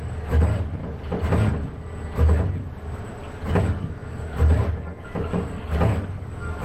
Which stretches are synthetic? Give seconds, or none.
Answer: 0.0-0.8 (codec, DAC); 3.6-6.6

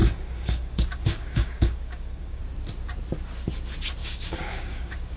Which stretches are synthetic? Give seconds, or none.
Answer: 0.0-2.4 (codec, DAC); 4.0-5.2

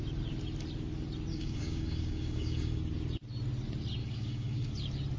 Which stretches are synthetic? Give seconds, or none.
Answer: 1.3-2.8 (codec, DAC); 4.0-4.7

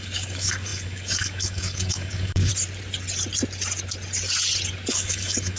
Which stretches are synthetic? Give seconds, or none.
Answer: 0.0-2.5 (codec, DAC); 4.9-5.6

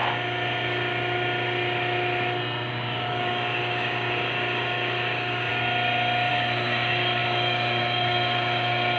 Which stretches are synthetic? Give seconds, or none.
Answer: 2.7-5.5 (codec, DAC); 6.3-9.0

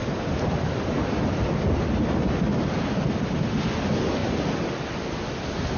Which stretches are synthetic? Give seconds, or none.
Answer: none

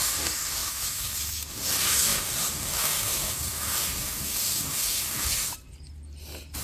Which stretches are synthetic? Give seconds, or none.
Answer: 0.0-5.5 (codec, DAC)